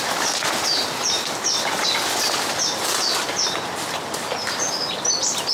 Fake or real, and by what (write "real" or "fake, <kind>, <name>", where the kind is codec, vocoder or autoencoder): real